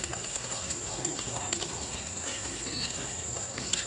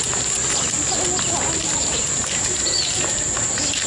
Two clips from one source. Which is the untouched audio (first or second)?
second